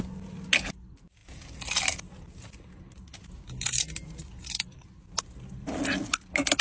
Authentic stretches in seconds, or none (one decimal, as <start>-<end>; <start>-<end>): 0.0-6.6

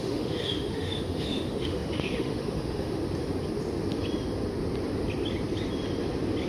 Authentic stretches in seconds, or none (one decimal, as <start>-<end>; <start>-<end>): 3.0-6.5

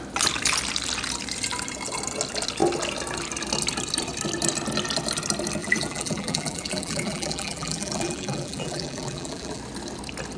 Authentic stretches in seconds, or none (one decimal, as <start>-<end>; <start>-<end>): 0.0-5.6; 9.6-10.4

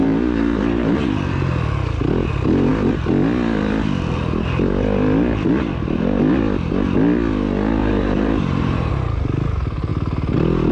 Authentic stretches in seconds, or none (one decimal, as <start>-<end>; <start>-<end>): 1.1-7.8; 8.9-10.7

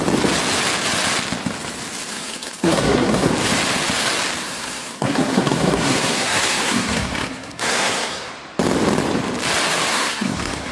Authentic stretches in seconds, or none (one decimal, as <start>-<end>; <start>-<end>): 0.0-2.1; 3.3-4.4; 8.3-9.9

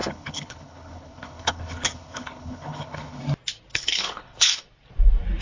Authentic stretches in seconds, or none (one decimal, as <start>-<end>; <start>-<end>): 3.2-3.7; 4.6-5.4

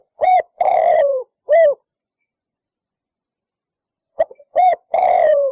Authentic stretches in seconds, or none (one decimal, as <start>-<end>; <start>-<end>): 1.4-1.9

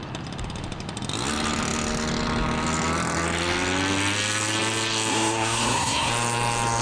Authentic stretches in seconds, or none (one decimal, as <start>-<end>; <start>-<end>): 0.0-5.1; 6.1-6.8